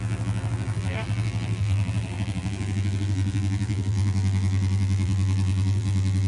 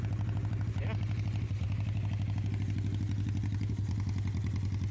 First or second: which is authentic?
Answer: second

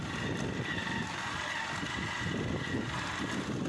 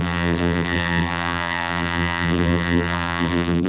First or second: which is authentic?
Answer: first